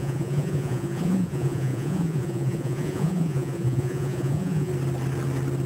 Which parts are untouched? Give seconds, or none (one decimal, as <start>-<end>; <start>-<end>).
4.7-5.7